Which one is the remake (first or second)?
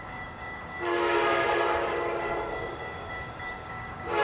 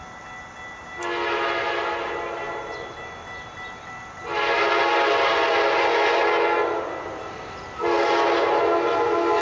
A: first